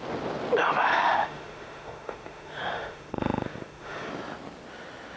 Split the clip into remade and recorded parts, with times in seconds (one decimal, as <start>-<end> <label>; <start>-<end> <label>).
0.0-1.0 recorded; 1.0-4.1 remade; 4.1-5.2 recorded